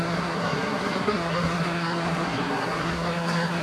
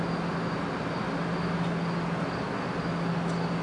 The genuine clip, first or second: second